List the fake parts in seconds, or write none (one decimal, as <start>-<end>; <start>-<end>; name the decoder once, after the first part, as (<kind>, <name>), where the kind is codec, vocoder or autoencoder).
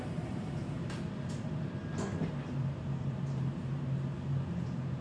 0.0-0.8 (vocoder, BigVGAN v2); 2.5-5.0